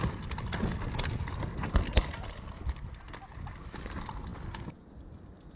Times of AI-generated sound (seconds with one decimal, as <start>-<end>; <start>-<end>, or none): none

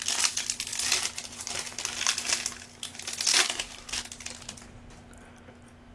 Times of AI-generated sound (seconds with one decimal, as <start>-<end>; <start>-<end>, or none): 3.3-3.9

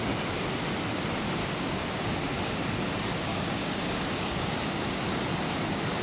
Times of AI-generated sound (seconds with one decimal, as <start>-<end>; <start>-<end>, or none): 1.4-2.3; 3.3-4.5

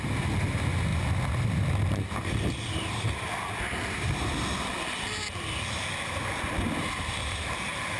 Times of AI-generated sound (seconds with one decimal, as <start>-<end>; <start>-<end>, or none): none